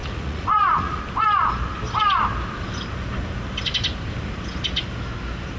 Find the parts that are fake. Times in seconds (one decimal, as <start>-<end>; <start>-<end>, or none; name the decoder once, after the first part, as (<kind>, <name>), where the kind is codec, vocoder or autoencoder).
0.0-1.0 (vocoder, Vocos)